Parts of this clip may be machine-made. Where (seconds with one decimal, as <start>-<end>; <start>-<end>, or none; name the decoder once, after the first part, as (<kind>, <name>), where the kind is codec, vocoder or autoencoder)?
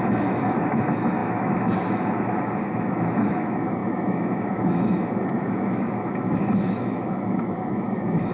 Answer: 0.0-8.3 (autoencoder, DAC-VAE)